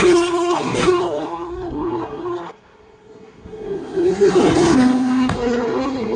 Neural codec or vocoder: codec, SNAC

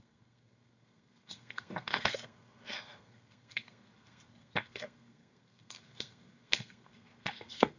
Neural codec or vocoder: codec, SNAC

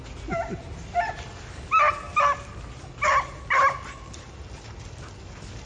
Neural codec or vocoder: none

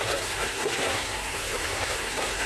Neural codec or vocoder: codec, SNAC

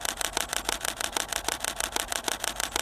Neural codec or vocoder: none